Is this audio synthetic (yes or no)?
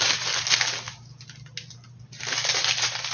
no